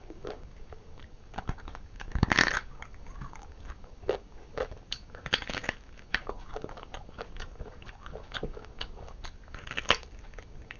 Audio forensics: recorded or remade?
remade